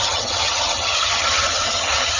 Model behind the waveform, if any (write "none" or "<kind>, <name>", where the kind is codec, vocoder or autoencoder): vocoder, HiFi-GAN